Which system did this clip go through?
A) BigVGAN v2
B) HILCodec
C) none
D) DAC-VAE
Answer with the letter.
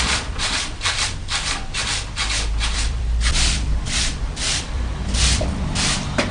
A